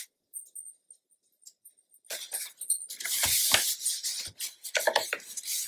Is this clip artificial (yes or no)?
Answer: no